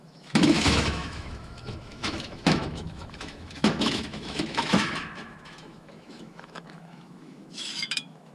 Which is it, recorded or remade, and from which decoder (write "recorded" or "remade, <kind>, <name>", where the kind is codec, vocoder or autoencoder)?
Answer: remade, autoencoder, DAC-VAE